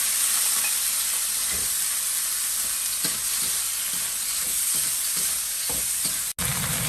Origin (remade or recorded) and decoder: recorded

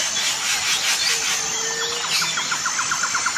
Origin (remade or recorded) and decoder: recorded